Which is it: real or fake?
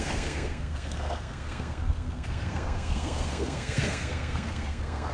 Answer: fake